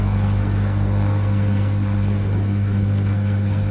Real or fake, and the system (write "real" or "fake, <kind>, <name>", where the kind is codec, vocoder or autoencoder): fake, codec, SNAC